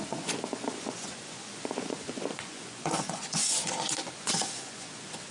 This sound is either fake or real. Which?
fake